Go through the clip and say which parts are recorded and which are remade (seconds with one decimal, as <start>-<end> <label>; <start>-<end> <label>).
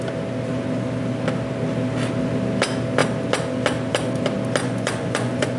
0.0-4.6 recorded; 4.6-5.6 remade